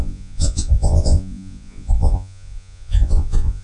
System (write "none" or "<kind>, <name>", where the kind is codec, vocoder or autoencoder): vocoder, Vocos